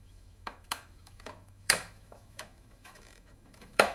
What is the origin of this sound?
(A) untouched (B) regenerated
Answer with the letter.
B